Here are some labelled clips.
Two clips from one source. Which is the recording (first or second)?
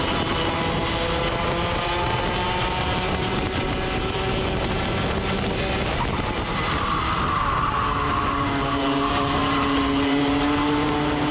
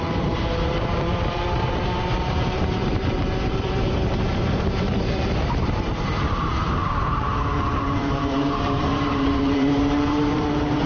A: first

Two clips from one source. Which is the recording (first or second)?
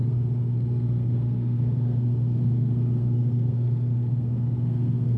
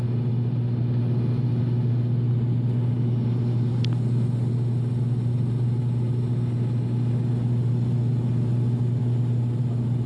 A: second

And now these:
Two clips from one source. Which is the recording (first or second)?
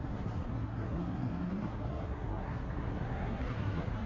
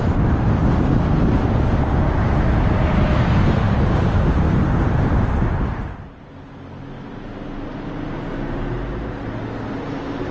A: second